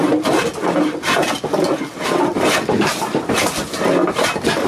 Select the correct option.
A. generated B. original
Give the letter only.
B